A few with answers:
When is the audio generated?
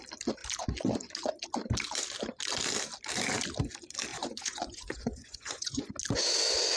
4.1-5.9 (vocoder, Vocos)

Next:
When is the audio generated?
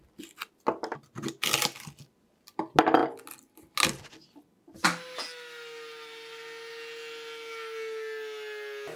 none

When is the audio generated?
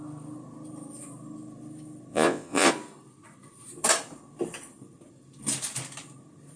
2.1-2.7 (vocoder, Vocos)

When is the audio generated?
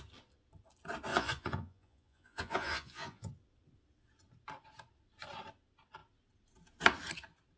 1.1-3.3 (vocoder, Vocos)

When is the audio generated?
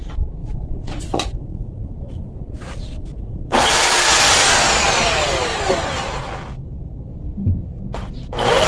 0.4-3.7 (vocoder, Vocos)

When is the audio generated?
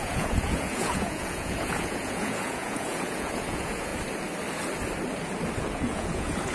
0.0-3.9 (vocoder, Vocos); 5.6-6.5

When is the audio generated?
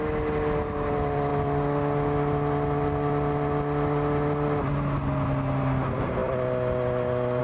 none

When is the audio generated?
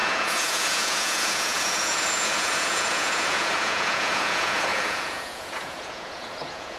0.0-6.8 (vocoder, Vocos)